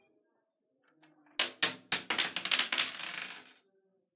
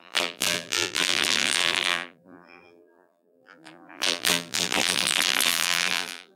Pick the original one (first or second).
first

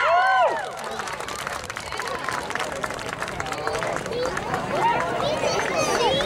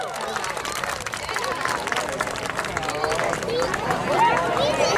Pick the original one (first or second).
second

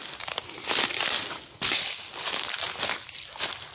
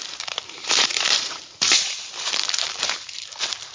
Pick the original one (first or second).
first